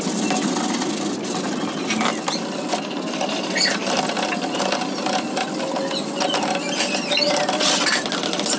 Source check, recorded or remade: recorded